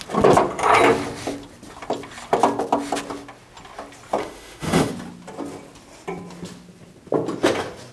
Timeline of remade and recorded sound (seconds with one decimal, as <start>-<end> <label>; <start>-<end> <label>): 0.0-4.2 recorded; 4.2-4.9 remade; 4.9-7.9 recorded